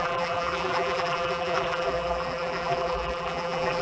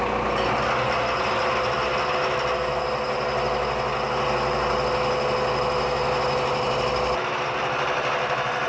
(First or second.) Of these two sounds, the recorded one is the second